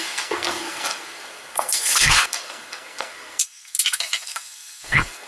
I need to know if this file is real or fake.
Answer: fake